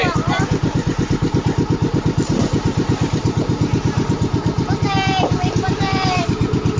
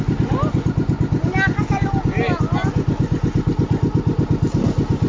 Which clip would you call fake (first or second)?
first